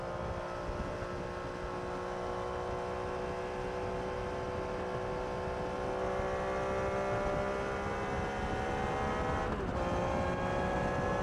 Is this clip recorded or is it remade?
recorded